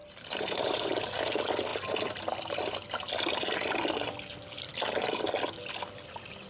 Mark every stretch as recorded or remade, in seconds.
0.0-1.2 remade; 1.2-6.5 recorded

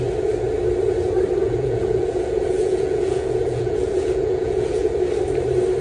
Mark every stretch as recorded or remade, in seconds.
0.0-1.4 recorded; 1.4-4.9 remade; 4.9-5.8 recorded

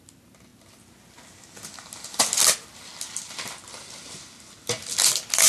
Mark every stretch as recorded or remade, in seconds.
0.0-5.5 recorded

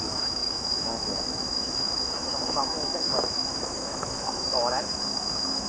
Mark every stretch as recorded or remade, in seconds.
0.0-5.7 remade

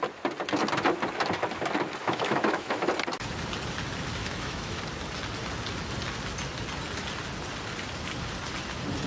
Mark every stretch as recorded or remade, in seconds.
0.0-2.0 recorded; 2.0-2.9 remade; 2.9-4.2 recorded; 4.2-4.8 remade; 4.8-9.1 recorded

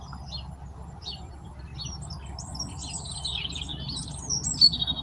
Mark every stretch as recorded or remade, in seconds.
0.0-1.7 remade; 1.7-2.6 recorded; 2.6-3.7 remade; 3.7-4.5 recorded; 4.5-5.0 remade